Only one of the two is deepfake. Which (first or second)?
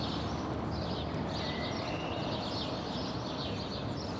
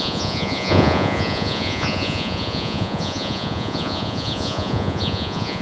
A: second